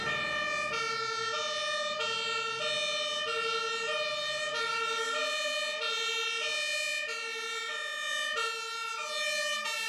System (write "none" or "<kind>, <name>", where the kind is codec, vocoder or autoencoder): none